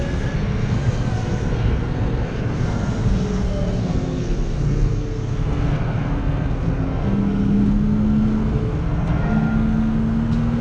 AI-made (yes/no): yes